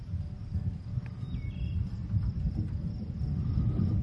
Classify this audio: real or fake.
real